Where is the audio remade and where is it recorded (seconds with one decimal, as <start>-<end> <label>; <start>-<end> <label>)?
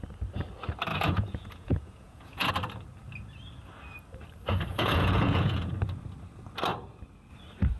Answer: 0.0-0.9 recorded; 0.9-2.5 remade; 2.5-4.7 recorded; 4.7-5.7 remade; 5.7-7.8 recorded